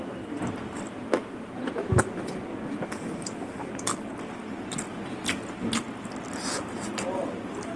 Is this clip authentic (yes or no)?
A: yes